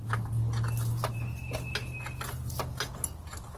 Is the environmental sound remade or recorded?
recorded